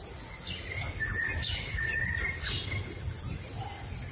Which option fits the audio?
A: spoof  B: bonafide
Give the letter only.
B